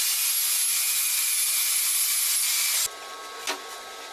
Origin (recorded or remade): recorded